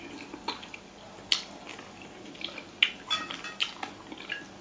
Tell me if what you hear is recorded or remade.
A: recorded